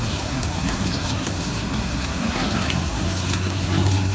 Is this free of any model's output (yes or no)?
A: no